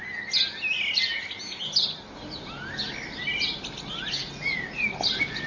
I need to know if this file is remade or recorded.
recorded